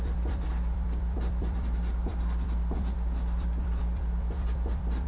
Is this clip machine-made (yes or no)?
yes